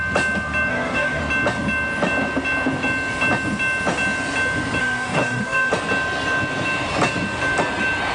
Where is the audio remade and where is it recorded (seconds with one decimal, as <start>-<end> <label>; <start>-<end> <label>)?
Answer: 0.0-0.7 recorded; 0.7-1.2 remade; 1.2-4.8 recorded; 4.8-5.7 remade; 5.7-8.1 recorded